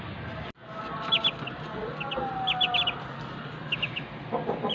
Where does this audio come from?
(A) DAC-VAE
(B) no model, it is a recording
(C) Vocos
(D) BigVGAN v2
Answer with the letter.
B